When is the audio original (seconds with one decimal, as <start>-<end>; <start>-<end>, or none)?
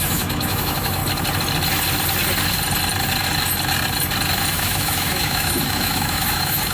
1.0-4.5